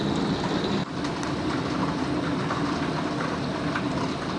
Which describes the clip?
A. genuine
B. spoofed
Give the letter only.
A